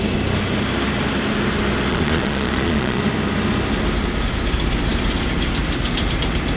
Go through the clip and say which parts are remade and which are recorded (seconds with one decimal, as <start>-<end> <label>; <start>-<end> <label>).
0.0-1.9 recorded; 1.9-3.0 remade; 3.0-6.6 recorded